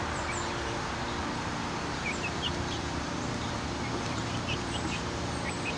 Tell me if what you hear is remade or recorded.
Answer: remade